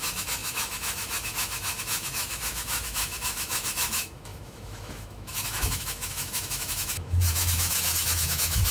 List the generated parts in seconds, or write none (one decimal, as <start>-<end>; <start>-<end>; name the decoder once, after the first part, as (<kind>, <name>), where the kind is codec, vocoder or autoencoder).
0.0-8.7 (autoencoder, DAC-VAE)